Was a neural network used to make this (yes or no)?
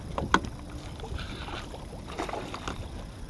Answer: no